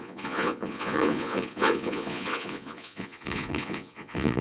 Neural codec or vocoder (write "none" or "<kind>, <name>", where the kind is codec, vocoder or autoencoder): vocoder, Vocos